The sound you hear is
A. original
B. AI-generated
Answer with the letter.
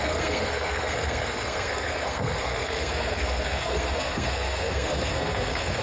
B